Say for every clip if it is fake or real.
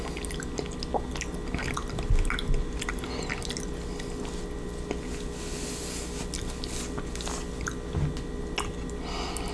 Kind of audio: real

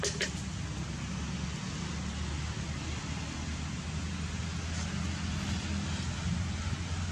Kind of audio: real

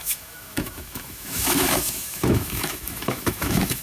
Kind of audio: fake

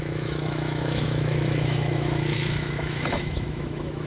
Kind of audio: fake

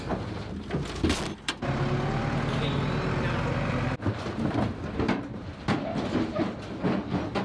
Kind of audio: real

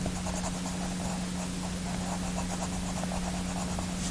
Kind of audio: real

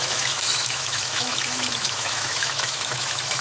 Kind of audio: fake